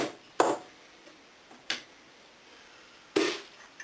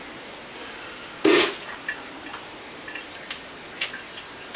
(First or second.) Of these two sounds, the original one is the second